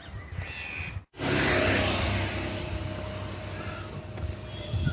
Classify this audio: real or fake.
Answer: real